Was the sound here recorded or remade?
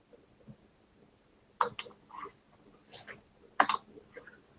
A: recorded